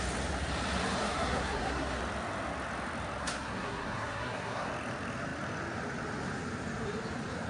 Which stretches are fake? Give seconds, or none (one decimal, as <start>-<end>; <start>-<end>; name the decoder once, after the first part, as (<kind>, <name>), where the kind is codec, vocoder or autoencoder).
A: 1.0-2.0 (codec, SNAC); 3.2-4.7